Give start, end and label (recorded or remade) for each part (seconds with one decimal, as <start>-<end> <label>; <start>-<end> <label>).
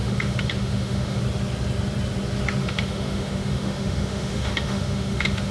0.0-1.2 remade; 1.2-2.6 recorded; 2.6-5.5 remade